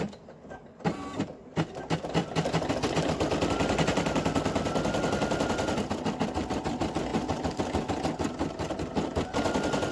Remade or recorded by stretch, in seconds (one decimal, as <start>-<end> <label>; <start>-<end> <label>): 0.0-9.9 recorded